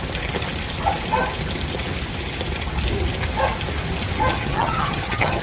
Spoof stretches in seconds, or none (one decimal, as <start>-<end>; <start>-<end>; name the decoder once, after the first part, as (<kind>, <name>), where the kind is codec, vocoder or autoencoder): 4.3-5.4 (vocoder, HiFi-GAN)